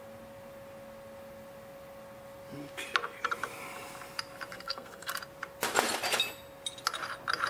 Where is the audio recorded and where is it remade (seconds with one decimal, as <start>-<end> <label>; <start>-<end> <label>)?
0.0-4.5 recorded; 4.5-5.1 remade; 5.1-7.5 recorded